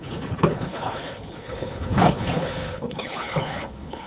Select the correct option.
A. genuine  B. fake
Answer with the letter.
B